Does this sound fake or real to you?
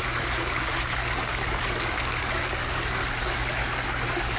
fake